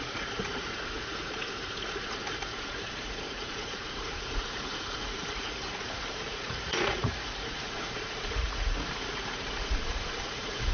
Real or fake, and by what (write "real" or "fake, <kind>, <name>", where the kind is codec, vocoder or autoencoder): fake, vocoder, Vocos